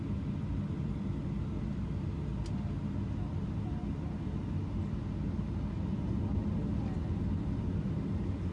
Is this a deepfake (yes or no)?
no